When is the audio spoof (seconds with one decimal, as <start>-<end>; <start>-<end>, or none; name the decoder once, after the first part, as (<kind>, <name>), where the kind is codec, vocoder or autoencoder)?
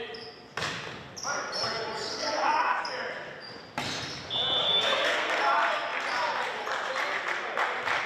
2.1-2.8 (codec, SNAC); 4.6-5.4